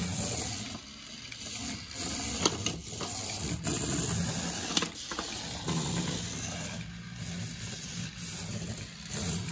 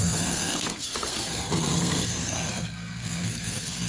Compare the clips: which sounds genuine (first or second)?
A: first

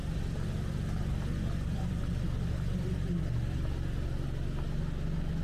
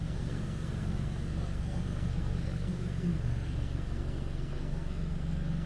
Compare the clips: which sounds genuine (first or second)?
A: first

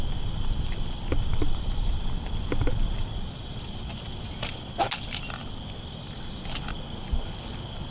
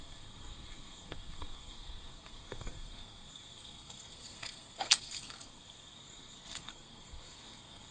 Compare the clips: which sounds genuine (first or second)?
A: first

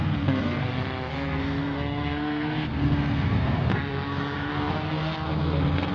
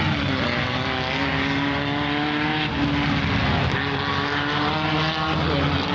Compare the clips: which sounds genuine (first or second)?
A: second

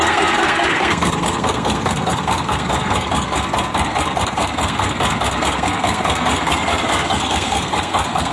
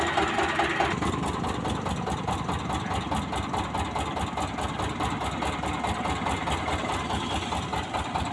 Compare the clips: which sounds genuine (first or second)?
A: second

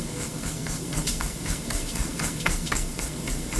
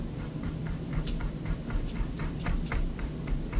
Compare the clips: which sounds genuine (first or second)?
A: second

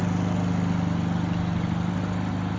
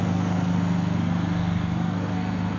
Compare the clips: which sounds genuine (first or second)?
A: first